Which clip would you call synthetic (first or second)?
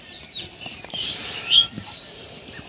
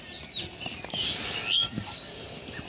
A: first